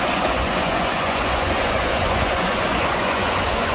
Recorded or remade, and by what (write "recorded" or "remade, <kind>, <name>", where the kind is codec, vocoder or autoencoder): remade, vocoder, Vocos